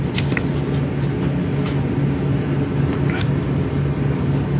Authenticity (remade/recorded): recorded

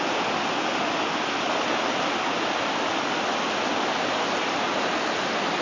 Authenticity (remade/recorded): recorded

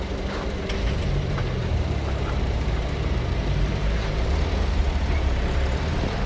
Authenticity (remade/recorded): remade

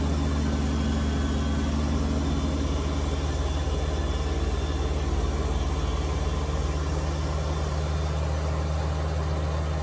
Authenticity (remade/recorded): recorded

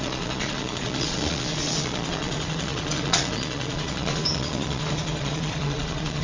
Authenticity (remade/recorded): remade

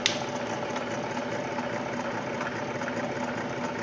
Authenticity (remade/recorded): recorded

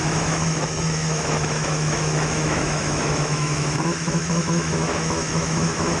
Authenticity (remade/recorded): remade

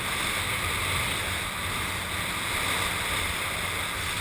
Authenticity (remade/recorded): recorded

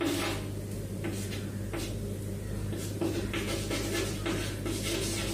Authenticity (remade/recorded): recorded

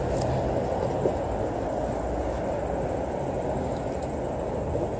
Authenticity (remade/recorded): recorded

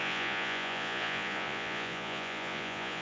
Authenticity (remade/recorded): remade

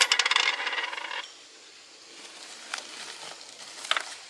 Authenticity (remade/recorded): recorded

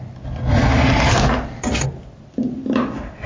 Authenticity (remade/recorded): recorded